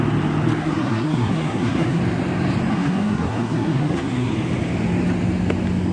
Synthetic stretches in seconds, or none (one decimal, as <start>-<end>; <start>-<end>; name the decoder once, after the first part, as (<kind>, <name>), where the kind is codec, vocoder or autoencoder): 0.6-2.0 (codec, SNAC); 2.7-4.3